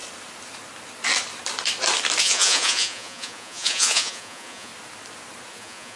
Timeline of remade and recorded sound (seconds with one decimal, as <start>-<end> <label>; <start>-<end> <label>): 0.0-2.2 recorded; 2.2-4.7 remade; 4.7-5.5 recorded; 5.5-6.0 remade